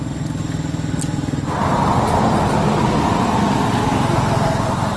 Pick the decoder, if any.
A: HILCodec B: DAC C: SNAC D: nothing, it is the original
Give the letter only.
D